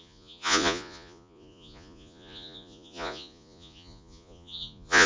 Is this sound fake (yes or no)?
yes